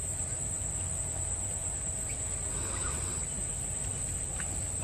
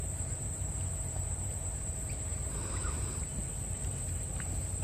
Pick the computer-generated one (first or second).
second